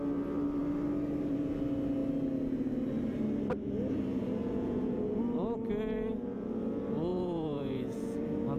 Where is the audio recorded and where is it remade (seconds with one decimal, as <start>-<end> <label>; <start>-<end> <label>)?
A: 0.0-4.4 recorded; 4.4-5.2 remade; 5.2-7.1 recorded; 7.1-8.2 remade; 8.2-8.6 recorded